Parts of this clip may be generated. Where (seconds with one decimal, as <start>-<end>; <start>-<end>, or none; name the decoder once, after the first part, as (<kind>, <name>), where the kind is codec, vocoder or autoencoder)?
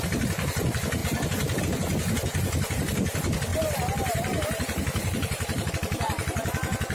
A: 1.0-1.6 (vocoder, BigVGAN v2); 3.5-5.7